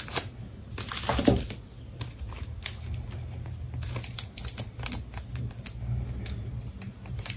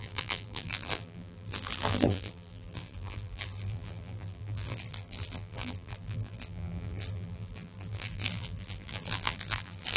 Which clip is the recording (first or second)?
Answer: first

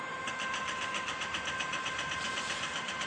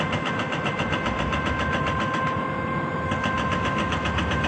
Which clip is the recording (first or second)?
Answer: second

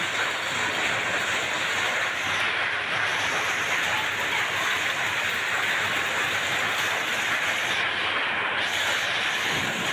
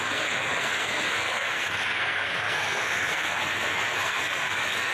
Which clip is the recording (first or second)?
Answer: first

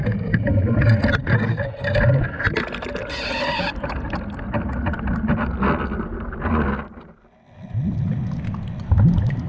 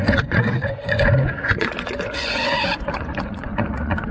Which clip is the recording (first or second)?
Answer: first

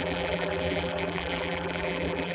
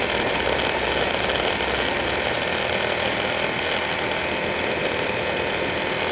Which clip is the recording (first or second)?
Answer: second